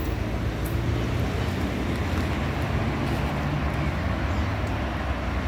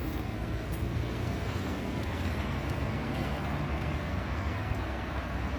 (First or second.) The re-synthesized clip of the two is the second